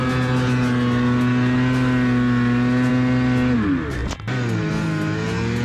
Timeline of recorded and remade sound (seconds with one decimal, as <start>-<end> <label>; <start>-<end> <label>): 0.0-4.0 recorded; 4.0-4.7 remade; 4.7-5.6 recorded